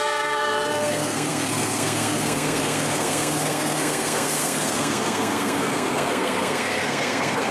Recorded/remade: remade